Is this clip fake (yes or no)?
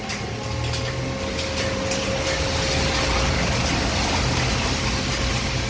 no